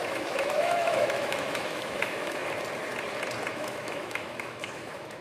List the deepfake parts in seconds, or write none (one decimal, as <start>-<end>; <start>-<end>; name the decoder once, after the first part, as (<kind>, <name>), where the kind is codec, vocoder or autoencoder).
0.0-2.4 (autoencoder, DAC-VAE); 3.5-5.2